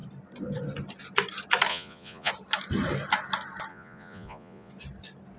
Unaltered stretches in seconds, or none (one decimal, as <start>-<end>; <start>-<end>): 0.0-1.7; 2.3-3.7; 4.7-5.4